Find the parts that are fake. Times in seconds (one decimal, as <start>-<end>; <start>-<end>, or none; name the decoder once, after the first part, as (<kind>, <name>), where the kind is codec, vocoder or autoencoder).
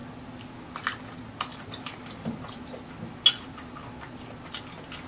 none